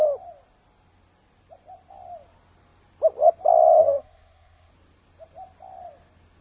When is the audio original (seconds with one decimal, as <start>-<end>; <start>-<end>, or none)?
0.0-3.8; 4.7-6.4

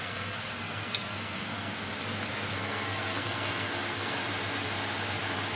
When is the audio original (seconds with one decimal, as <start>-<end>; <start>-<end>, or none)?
1.9-2.5; 4.2-5.6

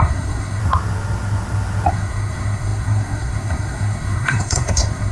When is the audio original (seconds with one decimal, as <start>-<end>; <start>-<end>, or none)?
0.6-1.9

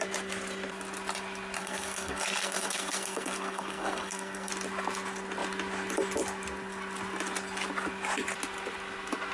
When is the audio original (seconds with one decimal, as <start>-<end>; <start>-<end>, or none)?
0.0-1.6; 4.5-9.3